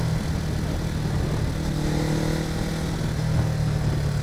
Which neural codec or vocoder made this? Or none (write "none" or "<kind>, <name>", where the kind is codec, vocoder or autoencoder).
none